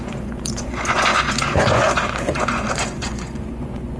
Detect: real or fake fake